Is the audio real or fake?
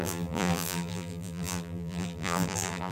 fake